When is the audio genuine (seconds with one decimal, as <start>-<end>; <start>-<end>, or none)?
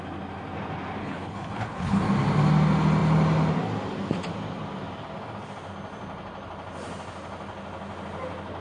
0.0-1.0; 2.0-8.6